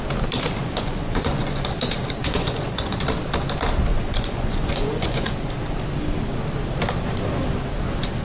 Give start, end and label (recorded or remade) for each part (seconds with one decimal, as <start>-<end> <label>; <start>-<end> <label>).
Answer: 0.0-0.6 recorded; 0.6-1.7 remade; 1.7-2.2 recorded; 2.2-3.0 remade; 3.0-3.9 recorded; 3.9-5.3 remade; 5.3-8.2 recorded

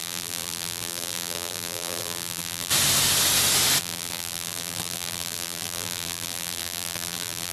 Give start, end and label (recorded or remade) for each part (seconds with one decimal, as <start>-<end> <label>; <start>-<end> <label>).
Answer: 0.0-2.7 remade; 2.7-3.8 recorded; 3.8-7.5 remade

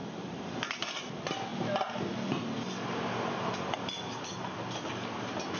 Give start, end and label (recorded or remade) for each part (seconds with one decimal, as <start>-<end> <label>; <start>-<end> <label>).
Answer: 0.0-0.8 remade; 0.8-5.6 recorded

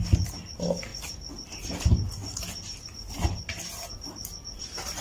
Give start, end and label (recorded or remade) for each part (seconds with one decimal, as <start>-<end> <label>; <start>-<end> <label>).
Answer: 0.0-5.0 recorded

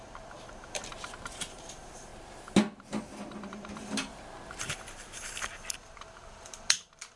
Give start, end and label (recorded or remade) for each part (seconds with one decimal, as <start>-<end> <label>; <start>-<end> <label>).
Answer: 0.0-0.9 remade; 0.9-1.5 recorded; 1.5-2.1 remade; 2.1-3.5 recorded; 3.5-4.1 remade; 4.1-4.6 recorded; 4.6-7.2 remade

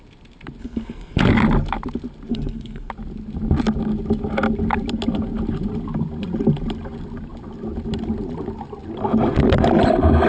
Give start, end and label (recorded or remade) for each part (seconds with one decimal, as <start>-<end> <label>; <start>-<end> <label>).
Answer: 0.0-0.6 recorded; 0.6-1.2 remade; 1.2-2.3 recorded; 2.3-2.9 remade; 2.9-10.3 recorded

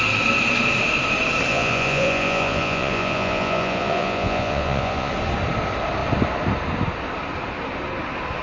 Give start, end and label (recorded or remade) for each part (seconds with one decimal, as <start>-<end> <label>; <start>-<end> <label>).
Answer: 0.0-1.5 recorded; 1.5-5.1 remade; 5.1-8.4 recorded